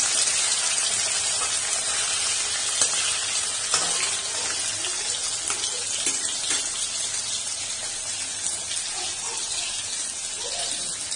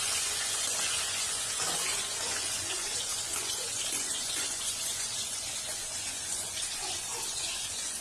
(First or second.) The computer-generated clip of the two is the second